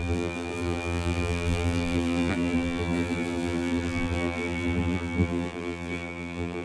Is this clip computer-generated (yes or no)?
yes